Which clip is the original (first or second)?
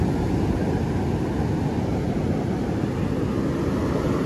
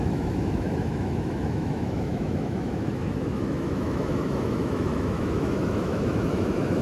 first